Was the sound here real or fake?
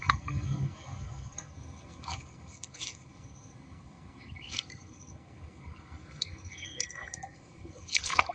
fake